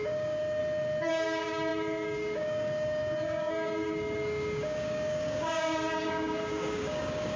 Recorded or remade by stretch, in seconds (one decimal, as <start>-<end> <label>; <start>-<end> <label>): 0.0-0.6 remade; 0.6-1.1 recorded; 1.1-7.4 remade

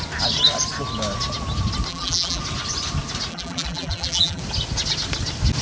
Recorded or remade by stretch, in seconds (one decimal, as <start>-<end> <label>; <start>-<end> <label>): 0.0-1.9 recorded; 1.9-2.4 remade; 2.4-3.3 recorded; 3.3-4.4 remade; 4.4-5.6 recorded

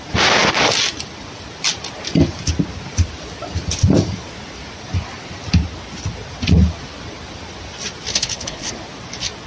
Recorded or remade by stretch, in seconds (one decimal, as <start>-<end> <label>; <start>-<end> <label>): 0.0-8.1 recorded; 8.1-8.7 remade; 8.7-9.5 recorded

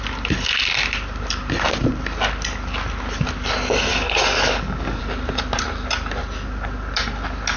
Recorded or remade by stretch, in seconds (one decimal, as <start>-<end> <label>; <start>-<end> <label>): 0.0-3.9 recorded; 3.9-5.0 remade; 5.0-7.6 recorded

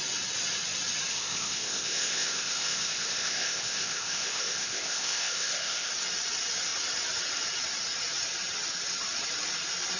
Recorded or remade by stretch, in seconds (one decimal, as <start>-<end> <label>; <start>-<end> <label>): 0.0-1.1 recorded; 1.1-5.9 remade; 5.9-10.0 recorded

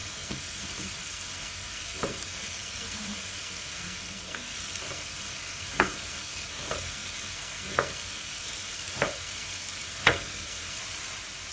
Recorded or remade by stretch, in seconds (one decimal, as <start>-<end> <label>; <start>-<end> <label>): 0.0-10.8 remade; 10.8-11.5 recorded

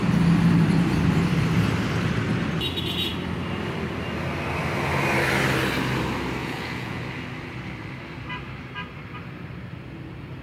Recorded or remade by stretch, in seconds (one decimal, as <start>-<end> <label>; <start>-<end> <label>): 0.0-6.4 recorded; 6.4-7.0 remade; 7.0-10.4 recorded

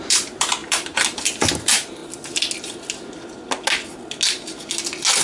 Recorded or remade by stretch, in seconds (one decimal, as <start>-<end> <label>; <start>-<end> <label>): 0.0-2.0 remade; 2.0-5.2 recorded